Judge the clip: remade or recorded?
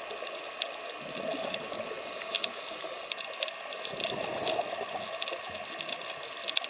recorded